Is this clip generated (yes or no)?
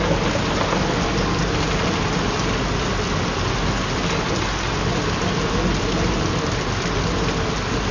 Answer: no